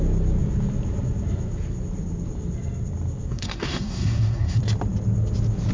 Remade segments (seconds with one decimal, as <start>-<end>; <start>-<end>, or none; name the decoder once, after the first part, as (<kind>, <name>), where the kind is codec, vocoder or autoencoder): 3.3-4.6 (codec, SNAC)